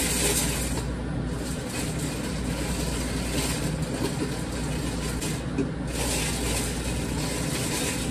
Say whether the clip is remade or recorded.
recorded